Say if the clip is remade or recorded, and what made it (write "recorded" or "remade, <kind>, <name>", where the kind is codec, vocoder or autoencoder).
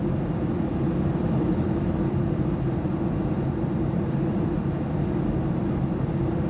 recorded